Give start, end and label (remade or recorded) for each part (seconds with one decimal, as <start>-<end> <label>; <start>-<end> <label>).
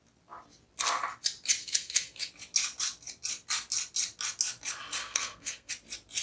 0.0-1.6 recorded; 1.6-2.3 remade; 2.3-5.0 recorded; 5.0-5.7 remade; 5.7-6.2 recorded